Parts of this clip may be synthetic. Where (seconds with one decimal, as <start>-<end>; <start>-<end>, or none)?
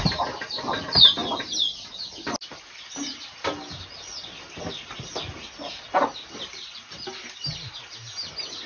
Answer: none